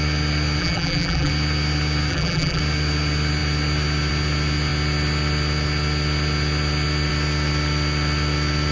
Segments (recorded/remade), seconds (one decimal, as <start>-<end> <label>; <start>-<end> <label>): 0.0-0.6 recorded; 0.6-1.3 remade; 1.3-2.1 recorded; 2.1-2.6 remade; 2.6-8.7 recorded